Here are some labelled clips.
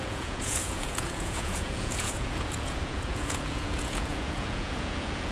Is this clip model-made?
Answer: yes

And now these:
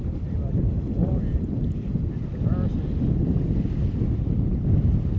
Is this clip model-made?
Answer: no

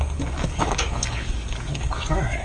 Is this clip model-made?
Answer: yes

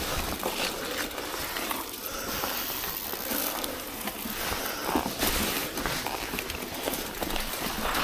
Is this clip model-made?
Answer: no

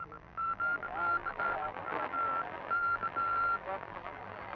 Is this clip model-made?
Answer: yes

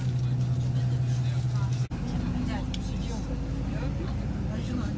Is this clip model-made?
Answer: no